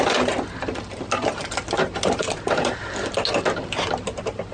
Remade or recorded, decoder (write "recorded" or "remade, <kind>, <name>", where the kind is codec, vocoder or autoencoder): recorded